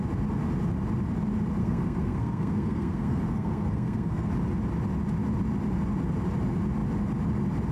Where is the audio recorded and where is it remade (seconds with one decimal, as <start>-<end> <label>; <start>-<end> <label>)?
0.0-1.6 recorded; 1.6-4.3 remade; 4.3-7.7 recorded